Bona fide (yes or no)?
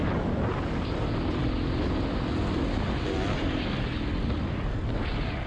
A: yes